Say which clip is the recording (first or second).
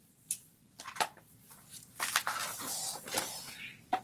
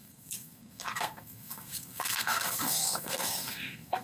first